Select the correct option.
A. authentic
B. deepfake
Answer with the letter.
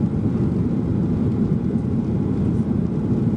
A